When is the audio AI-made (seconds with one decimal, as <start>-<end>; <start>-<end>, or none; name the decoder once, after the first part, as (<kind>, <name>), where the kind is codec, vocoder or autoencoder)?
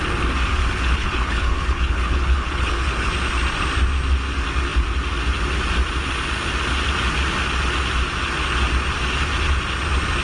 0.6-3.1 (codec, HILCodec)